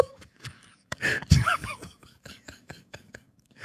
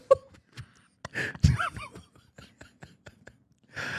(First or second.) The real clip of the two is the second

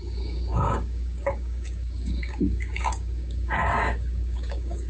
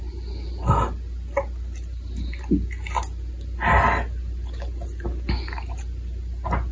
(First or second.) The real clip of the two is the second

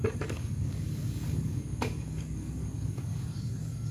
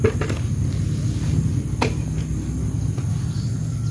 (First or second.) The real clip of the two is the second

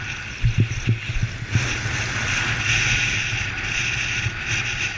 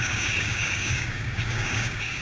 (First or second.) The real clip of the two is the first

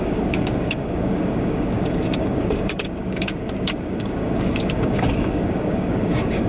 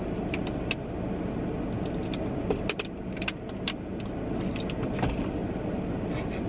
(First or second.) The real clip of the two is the second